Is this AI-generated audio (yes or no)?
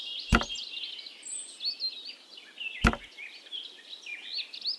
no